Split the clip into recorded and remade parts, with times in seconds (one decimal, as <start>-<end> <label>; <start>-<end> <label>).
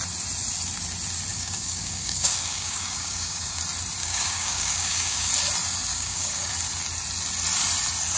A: 0.0-1.3 recorded; 1.3-3.6 remade; 3.6-4.0 recorded; 4.0-5.3 remade; 5.3-5.9 recorded; 5.9-6.5 remade; 6.5-8.2 recorded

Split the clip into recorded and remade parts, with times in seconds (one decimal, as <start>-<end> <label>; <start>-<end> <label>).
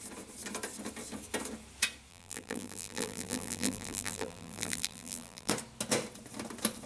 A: 0.0-2.1 recorded; 2.1-5.5 remade; 5.5-6.9 recorded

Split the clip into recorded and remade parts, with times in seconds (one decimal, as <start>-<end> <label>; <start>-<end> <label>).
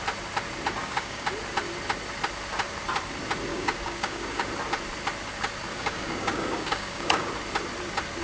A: 0.0-0.8 recorded; 0.8-1.3 remade; 1.3-3.5 recorded; 3.5-4.5 remade; 4.5-5.7 recorded; 5.7-7.3 remade; 7.3-8.2 recorded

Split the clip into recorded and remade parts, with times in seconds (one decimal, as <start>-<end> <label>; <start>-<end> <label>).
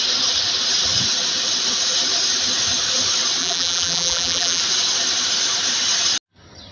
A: 0.0-3.4 recorded; 3.4-4.6 remade; 4.6-6.7 recorded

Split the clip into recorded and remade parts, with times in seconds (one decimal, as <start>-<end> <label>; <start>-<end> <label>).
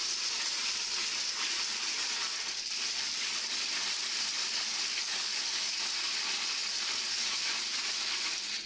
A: 0.0-8.7 recorded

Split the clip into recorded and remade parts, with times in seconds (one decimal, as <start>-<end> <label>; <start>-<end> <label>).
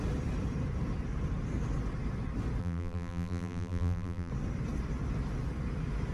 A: 0.0-2.6 recorded; 2.6-4.3 remade; 4.3-6.1 recorded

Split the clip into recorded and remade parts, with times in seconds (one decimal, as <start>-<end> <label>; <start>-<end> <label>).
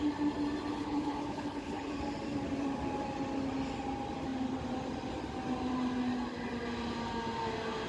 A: 0.0-0.7 recorded; 0.7-1.9 remade; 1.9-7.9 recorded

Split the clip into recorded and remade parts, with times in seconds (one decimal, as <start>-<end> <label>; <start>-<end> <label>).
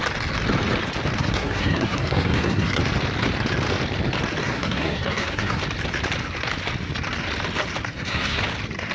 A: 0.0-1.2 recorded; 1.2-2.8 remade; 2.8-4.4 recorded; 4.4-5.6 remade; 5.6-7.9 recorded; 7.9-8.4 remade; 8.4-8.9 recorded